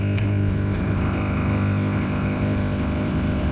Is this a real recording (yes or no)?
no